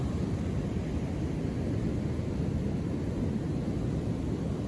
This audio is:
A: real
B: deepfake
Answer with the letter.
A